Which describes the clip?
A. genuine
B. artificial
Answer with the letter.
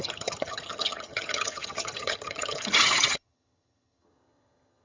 B